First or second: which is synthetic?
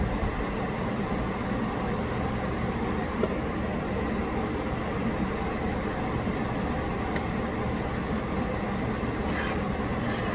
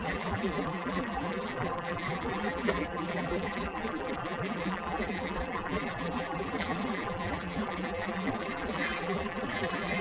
second